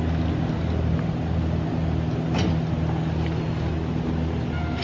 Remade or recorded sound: recorded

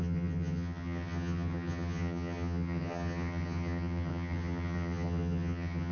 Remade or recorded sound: remade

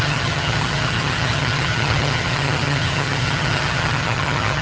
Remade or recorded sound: remade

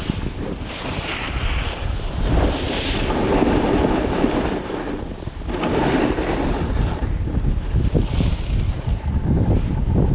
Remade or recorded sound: recorded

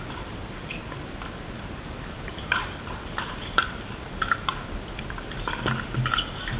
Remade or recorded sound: recorded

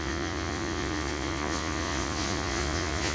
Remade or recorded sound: remade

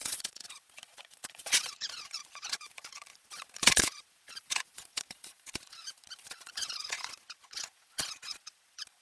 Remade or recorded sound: remade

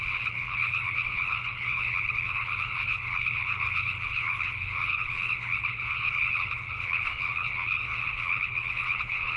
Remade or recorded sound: remade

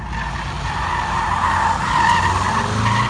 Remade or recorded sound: recorded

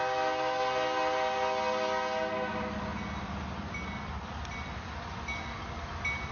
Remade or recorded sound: recorded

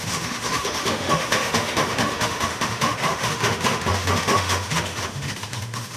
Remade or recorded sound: remade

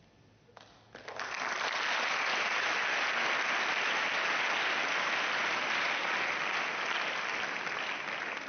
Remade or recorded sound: recorded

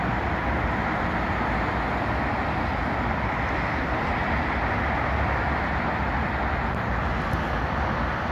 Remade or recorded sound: recorded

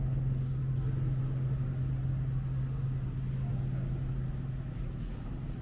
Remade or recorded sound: recorded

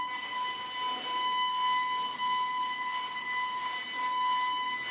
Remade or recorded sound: recorded